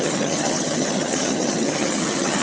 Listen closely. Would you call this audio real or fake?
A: fake